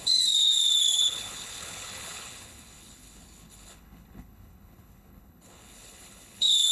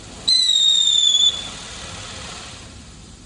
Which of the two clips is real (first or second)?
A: second